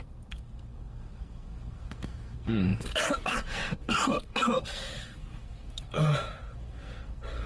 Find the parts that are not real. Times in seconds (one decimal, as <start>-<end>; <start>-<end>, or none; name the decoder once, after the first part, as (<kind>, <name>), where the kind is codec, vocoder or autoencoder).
0.0-7.5 (codec, SNAC)